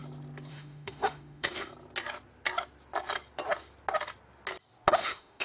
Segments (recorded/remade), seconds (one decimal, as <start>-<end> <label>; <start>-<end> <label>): 0.0-0.5 recorded; 0.5-1.7 remade; 1.7-4.9 recorded; 4.9-5.4 remade